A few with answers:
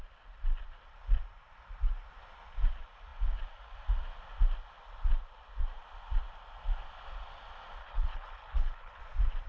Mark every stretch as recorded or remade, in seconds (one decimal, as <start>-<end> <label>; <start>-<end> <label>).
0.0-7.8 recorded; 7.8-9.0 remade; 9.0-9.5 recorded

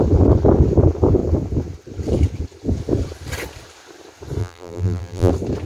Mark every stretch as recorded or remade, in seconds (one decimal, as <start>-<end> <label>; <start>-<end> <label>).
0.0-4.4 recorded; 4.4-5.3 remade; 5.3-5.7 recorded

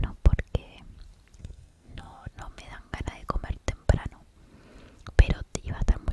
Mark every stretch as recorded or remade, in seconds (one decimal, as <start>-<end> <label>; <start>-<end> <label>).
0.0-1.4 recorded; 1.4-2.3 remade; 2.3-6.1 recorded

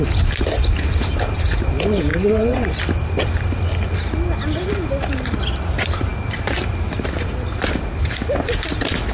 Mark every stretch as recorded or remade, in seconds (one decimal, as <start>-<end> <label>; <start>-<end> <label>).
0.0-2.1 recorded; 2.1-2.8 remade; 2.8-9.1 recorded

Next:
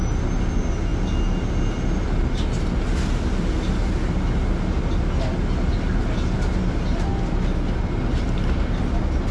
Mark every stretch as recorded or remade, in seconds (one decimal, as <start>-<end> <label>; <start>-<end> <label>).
0.0-9.3 recorded